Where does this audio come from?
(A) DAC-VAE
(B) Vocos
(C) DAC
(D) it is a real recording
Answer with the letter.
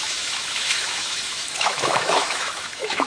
A